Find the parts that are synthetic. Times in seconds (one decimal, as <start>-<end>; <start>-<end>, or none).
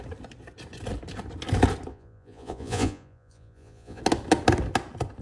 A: 1.9-4.0